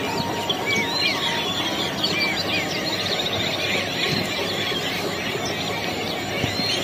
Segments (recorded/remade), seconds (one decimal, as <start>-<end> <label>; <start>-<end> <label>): 0.0-1.1 recorded; 1.1-5.2 remade; 5.2-5.8 recorded; 5.8-6.3 remade; 6.3-6.8 recorded